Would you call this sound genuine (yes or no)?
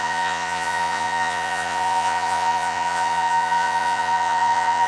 no